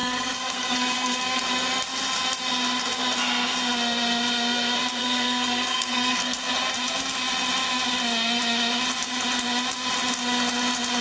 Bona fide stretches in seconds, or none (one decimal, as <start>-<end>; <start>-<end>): 1.4-5.0; 6.5-11.0